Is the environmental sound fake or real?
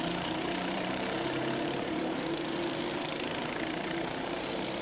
fake